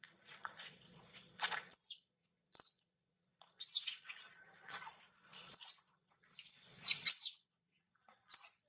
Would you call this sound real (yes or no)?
no